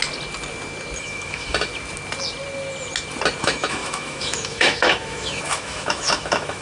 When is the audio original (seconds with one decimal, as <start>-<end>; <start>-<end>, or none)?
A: 0.0-1.0; 1.7-3.4

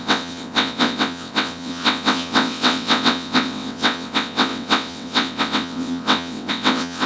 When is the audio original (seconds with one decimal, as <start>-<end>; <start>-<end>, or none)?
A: none

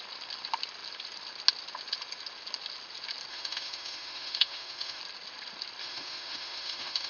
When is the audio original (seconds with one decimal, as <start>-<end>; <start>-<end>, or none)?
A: 0.0-3.3; 5.0-5.8

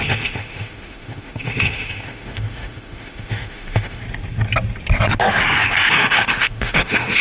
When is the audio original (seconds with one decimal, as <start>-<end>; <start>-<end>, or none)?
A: 4.0-5.9

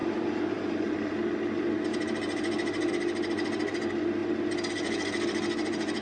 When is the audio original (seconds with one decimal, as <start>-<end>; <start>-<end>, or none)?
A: 0.8-6.0